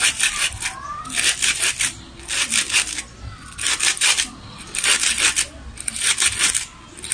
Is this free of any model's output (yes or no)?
yes